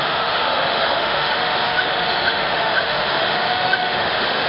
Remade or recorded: remade